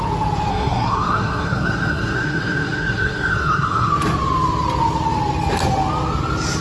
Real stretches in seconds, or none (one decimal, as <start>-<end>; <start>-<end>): 0.0-0.5; 3.9-6.6